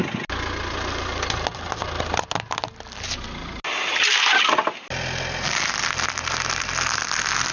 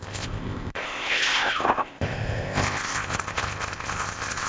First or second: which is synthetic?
second